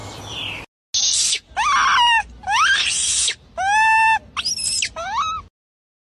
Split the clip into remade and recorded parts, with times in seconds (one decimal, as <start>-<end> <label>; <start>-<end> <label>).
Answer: 0.0-0.6 remade; 0.6-6.2 recorded